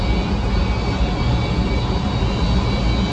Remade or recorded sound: recorded